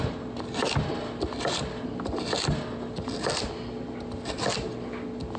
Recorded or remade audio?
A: recorded